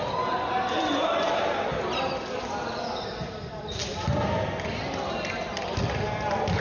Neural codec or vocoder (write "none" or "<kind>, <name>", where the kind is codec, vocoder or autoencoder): none